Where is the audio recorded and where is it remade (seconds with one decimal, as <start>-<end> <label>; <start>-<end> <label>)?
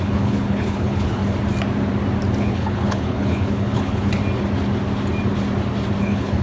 0.0-1.2 remade; 1.2-2.4 recorded; 2.4-4.2 remade; 4.2-6.0 recorded; 6.0-6.4 remade